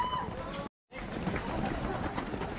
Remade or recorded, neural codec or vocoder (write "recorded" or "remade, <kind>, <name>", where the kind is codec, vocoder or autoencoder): recorded